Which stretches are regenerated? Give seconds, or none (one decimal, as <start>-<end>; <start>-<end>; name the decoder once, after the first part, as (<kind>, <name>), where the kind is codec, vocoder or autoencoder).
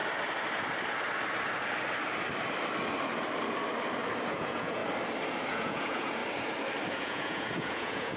4.3-4.8 (vocoder, Vocos); 5.5-6.2; 6.9-8.2